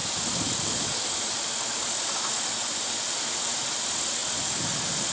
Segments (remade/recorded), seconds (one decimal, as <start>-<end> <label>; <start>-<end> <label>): 0.0-5.1 recorded